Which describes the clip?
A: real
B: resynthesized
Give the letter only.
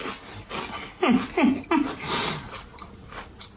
A